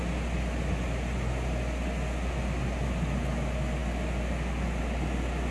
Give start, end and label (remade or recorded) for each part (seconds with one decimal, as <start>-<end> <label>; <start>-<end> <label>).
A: 0.0-5.5 recorded